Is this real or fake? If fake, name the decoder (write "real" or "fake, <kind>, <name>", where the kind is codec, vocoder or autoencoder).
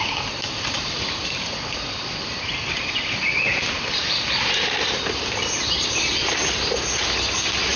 real